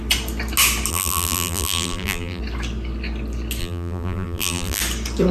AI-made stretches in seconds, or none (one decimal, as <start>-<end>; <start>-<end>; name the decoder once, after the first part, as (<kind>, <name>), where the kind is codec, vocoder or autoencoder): 0.9-2.4 (vocoder, BigVGAN v2); 3.6-4.8